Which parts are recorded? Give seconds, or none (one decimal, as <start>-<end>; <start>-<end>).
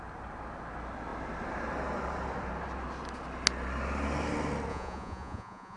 0.0-4.7